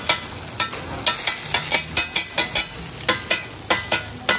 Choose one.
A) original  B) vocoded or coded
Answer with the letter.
A